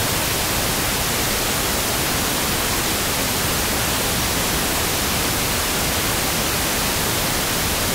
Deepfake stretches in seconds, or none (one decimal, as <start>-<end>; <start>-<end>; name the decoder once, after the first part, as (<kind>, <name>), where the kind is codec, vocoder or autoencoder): none